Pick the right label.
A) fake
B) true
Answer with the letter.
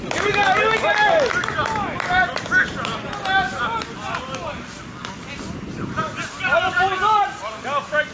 B